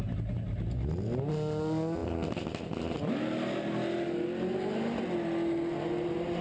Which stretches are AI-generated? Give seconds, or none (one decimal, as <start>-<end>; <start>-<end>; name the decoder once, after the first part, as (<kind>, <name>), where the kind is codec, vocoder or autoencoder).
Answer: none